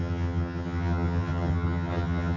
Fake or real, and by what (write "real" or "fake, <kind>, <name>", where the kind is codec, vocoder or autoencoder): fake, vocoder, HiFi-GAN